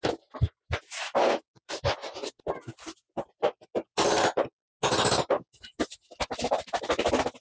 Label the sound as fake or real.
real